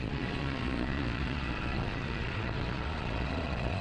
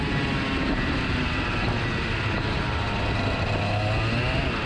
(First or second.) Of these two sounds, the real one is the second